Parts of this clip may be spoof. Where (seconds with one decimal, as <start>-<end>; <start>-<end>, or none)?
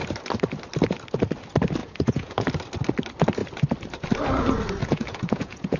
1.8-2.5; 4.8-5.8